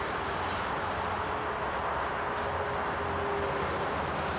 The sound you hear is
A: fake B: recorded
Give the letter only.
B